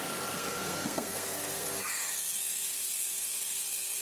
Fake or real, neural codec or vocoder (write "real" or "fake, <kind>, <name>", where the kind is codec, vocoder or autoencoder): fake, codec, SNAC